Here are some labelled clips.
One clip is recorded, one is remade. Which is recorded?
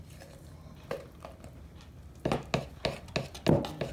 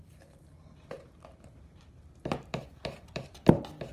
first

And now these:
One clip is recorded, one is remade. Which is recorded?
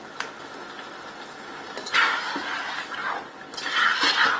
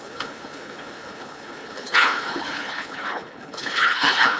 first